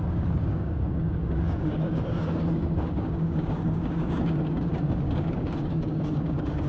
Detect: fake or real fake